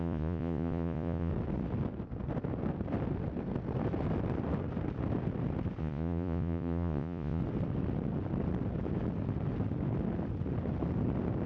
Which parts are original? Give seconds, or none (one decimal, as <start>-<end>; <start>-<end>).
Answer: 1.3-5.8; 7.4-11.5